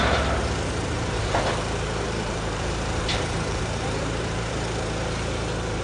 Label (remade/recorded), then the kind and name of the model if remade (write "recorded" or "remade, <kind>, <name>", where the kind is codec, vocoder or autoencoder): remade, vocoder, BigVGAN v2